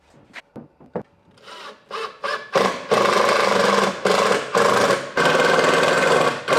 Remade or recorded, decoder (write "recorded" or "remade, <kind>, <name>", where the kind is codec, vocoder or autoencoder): recorded